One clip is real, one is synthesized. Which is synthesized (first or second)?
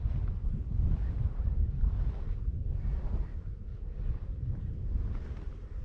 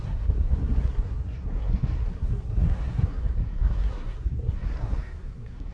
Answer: second